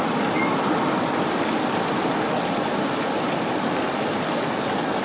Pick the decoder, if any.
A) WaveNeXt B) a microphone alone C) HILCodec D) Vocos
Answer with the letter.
B